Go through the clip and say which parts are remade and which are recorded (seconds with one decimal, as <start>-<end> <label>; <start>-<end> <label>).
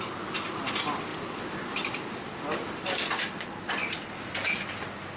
0.0-2.5 recorded; 2.5-3.3 remade; 3.3-5.2 recorded